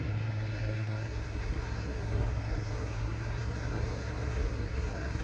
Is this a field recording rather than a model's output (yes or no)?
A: no